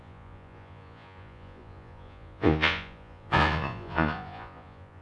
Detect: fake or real fake